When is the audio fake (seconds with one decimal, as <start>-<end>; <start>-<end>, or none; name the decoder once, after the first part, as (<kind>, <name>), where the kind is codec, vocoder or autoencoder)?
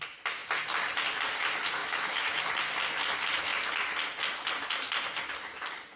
1.8-2.5 (autoencoder, DAC-VAE)